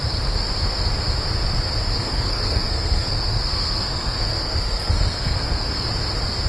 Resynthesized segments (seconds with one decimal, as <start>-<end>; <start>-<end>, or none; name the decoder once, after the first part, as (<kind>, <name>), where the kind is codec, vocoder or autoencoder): 2.0-5.9 (codec, SNAC)